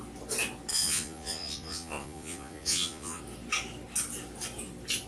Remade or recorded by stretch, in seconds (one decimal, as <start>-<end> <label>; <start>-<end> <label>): 0.0-0.7 recorded; 0.7-3.2 remade; 3.2-5.1 recorded